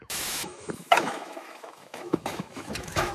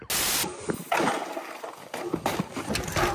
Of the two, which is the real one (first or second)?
second